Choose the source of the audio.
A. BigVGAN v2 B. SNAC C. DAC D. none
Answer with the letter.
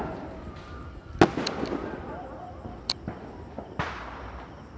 D